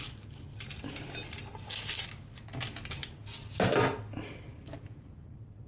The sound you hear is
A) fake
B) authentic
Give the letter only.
B